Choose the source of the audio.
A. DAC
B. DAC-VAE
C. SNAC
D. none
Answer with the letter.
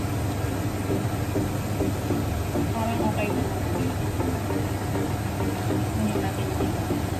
D